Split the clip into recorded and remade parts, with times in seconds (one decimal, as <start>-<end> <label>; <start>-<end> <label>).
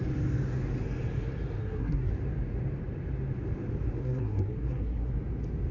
0.0-1.6 recorded; 1.6-2.1 remade; 2.1-4.0 recorded; 4.0-5.1 remade; 5.1-5.7 recorded